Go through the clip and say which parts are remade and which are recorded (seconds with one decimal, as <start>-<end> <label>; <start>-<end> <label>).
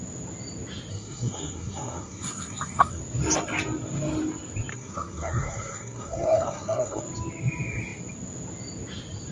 0.0-0.9 recorded; 0.9-3.0 remade; 3.0-4.7 recorded; 4.7-7.0 remade; 7.0-9.3 recorded